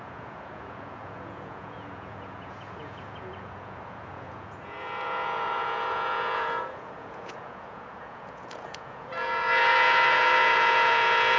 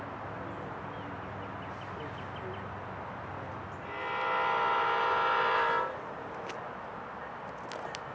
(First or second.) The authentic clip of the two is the second